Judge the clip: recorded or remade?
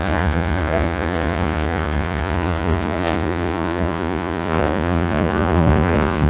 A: remade